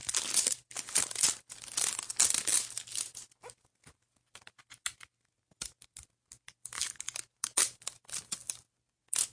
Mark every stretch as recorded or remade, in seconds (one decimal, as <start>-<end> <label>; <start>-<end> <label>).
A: 0.0-9.3 recorded